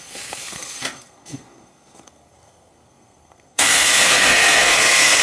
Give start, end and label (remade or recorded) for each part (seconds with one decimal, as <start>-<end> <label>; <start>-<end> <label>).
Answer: 0.0-5.2 remade